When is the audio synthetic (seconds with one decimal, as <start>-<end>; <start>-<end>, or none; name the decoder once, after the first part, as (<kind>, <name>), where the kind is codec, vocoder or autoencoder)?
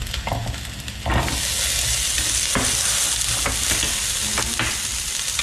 none